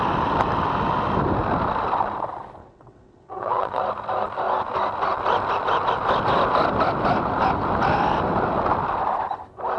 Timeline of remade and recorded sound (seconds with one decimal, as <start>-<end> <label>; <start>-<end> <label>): 0.0-2.6 recorded; 2.6-3.8 remade; 3.8-9.8 recorded